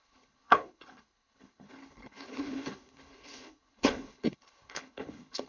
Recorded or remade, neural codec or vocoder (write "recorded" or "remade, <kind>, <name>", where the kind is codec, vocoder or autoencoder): remade, codec, HILCodec